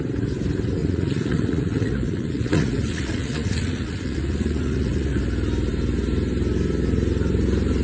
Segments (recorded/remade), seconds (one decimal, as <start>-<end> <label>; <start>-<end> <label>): 0.0-0.8 recorded; 0.8-5.2 remade; 5.2-7.8 recorded